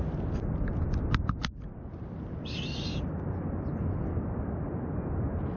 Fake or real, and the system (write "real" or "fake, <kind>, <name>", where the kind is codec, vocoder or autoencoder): real